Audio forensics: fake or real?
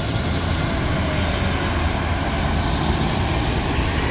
real